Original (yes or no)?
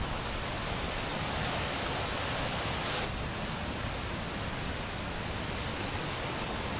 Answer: yes